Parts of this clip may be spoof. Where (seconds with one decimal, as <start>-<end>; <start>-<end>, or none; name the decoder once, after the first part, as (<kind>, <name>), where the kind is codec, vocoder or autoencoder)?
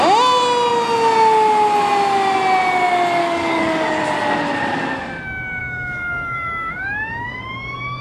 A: 3.2-4.0 (codec, DAC); 5.6-8.0